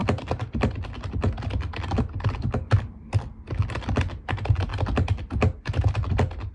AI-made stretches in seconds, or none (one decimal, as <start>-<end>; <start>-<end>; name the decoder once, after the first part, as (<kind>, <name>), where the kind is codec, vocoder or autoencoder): none